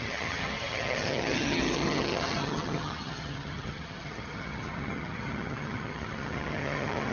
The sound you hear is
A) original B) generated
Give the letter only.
B